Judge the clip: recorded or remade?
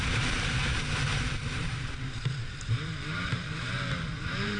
remade